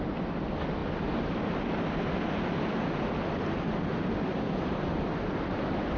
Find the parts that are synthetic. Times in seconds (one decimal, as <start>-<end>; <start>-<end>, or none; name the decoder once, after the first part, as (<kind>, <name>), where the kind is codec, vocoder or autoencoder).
none